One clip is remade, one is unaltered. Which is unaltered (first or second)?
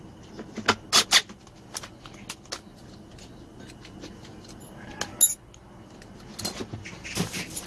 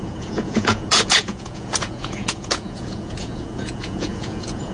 first